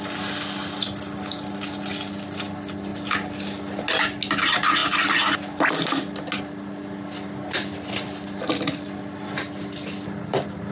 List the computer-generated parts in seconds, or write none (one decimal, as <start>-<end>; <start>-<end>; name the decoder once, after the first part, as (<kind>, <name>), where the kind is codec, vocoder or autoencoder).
none